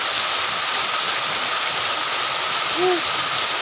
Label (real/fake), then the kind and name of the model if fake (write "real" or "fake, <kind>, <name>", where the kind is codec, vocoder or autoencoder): real